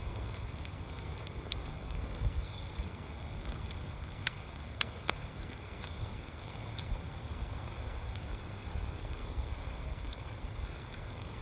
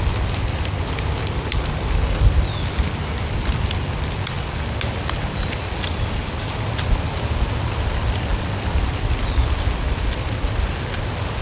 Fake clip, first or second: first